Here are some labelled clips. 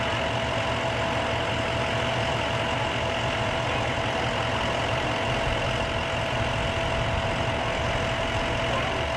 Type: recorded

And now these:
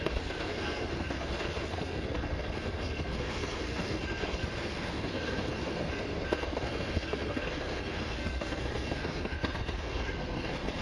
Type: remade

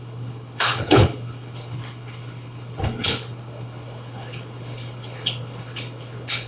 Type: remade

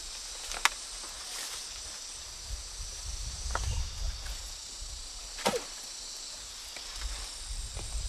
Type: recorded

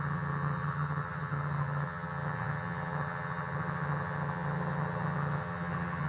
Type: remade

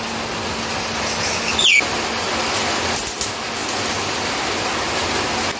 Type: recorded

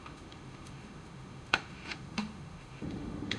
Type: remade